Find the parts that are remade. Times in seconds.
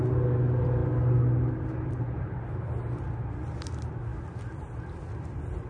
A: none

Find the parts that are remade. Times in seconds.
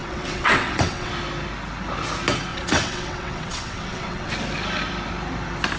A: 0.0-1.1; 2.5-4.3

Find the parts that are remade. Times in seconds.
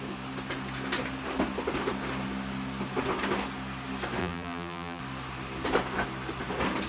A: 4.2-5.0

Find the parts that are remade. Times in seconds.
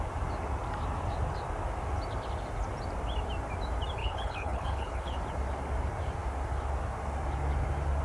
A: 4.0-5.2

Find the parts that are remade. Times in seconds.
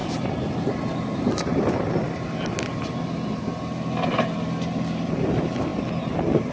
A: none